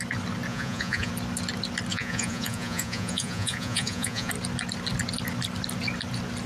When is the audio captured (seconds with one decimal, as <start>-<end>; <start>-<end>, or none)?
0.0-0.5; 1.1-1.9; 4.3-6.5